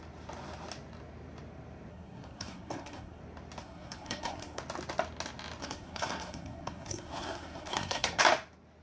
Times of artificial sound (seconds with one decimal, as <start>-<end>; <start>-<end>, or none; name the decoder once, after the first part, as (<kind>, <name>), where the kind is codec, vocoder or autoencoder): 1.9-3.2 (codec, SNAC); 3.6-4.6; 5.6-8.2